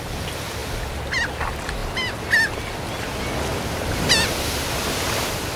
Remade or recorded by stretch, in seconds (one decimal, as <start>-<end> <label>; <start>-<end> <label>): 0.0-5.6 recorded